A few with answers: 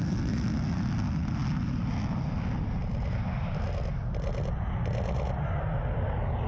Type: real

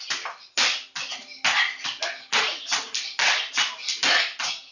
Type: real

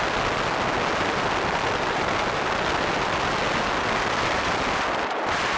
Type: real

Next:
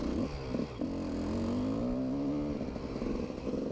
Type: real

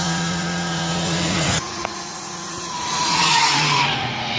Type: fake